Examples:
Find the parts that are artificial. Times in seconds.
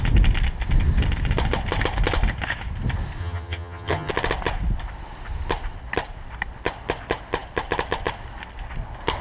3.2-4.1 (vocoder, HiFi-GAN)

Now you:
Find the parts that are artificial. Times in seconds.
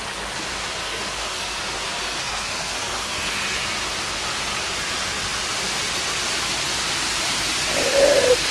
0.8-1.6 (codec, SNAC); 2.0-3.6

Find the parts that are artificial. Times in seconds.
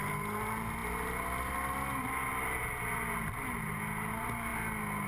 none